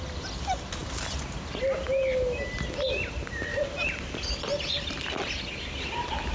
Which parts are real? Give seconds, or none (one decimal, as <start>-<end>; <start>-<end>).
0.0-6.3